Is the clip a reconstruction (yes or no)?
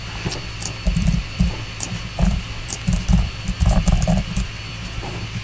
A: yes